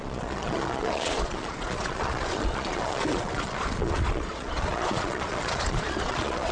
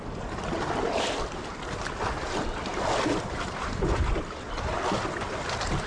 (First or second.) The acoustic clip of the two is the second